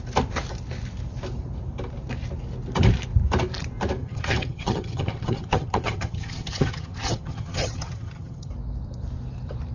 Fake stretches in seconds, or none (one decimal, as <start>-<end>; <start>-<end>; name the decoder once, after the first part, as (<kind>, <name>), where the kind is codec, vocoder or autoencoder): 4.0-8.5 (vocoder, HiFi-GAN)